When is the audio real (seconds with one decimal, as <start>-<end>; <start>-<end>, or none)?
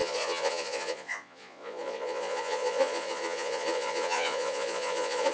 none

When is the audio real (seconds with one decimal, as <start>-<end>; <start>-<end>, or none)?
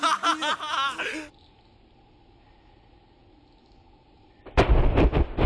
0.0-5.5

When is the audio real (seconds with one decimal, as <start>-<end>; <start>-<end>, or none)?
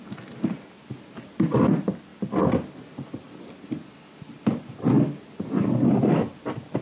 0.0-6.8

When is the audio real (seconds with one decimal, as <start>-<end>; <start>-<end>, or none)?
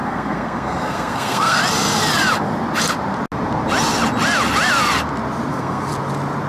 1.6-5.5; 5.9-6.5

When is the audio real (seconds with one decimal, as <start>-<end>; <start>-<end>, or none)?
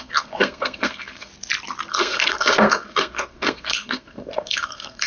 1.3-1.9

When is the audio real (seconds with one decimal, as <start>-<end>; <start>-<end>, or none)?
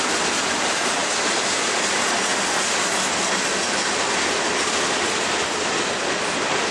0.0-6.7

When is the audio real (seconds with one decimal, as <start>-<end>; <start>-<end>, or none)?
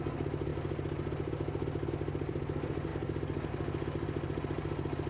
0.0-5.1